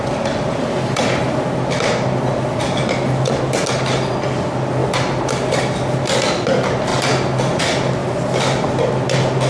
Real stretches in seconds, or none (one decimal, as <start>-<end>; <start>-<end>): 0.0-4.8; 5.8-6.9; 7.6-9.5